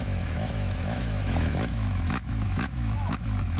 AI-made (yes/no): yes